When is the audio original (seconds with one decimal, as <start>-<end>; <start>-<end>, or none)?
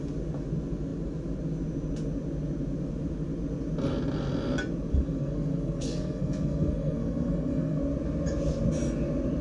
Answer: 0.0-4.9; 7.8-9.4